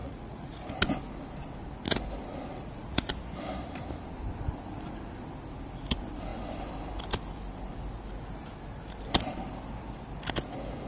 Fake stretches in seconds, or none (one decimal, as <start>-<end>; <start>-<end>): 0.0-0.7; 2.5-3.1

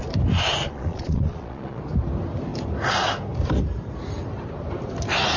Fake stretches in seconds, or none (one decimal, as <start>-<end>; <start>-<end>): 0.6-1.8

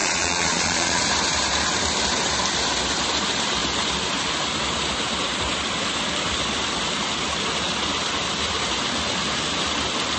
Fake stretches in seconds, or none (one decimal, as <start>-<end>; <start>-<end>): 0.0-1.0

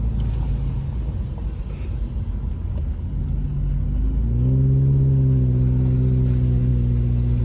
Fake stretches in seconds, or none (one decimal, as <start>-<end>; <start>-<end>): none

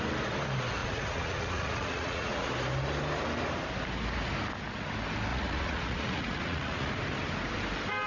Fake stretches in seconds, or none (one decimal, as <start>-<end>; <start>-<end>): 0.8-2.5; 5.3-6.9